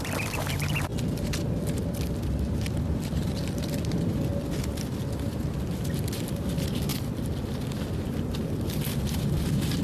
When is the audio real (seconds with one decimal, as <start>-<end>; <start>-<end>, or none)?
0.9-2.8; 4.3-5.7